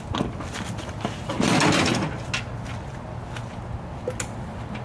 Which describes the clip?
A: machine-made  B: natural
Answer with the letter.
B